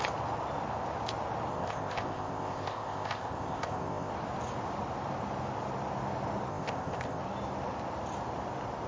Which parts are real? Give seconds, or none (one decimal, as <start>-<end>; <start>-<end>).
0.0-1.5; 4.1-6.5; 7.2-8.9